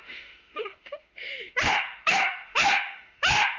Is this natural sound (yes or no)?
no